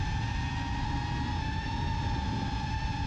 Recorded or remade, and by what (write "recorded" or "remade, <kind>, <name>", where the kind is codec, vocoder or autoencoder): recorded